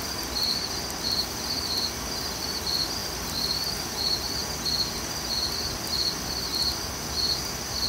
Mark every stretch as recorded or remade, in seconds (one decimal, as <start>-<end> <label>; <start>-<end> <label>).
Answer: 0.0-3.0 recorded; 3.0-3.9 remade; 3.9-7.9 recorded